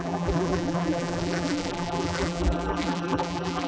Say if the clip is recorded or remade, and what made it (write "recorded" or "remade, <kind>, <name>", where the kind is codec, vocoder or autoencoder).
remade, vocoder, BigVGAN v2